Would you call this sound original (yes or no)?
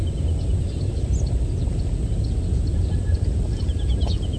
yes